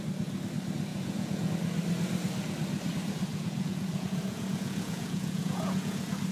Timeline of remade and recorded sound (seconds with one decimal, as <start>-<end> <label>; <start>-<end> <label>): 0.0-0.9 recorded; 0.9-1.5 remade; 1.5-3.3 recorded; 3.3-6.3 remade